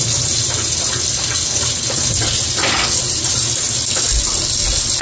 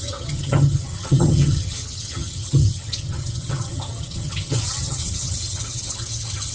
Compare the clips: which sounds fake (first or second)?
second